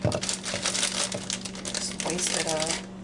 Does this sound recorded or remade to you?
recorded